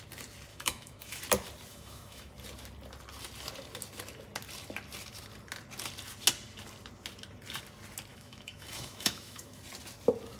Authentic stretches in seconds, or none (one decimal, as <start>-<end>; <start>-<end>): 0.0-0.5; 1.2-1.7; 2.3-8.1; 9.6-10.4